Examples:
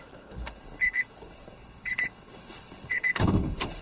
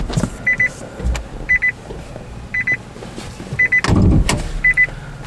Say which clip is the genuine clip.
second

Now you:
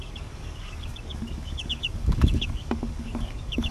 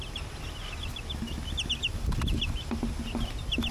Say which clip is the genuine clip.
second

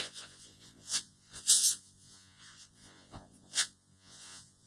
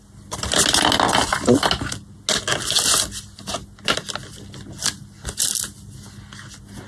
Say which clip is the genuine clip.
second